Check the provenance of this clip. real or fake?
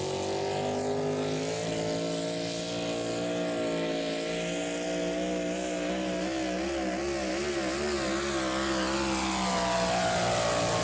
real